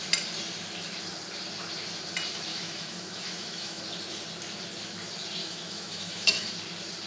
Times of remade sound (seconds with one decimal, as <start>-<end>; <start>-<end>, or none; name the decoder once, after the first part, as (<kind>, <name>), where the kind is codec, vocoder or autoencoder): 2.5-3.8 (autoencoder, DAC-VAE); 5.4-6.5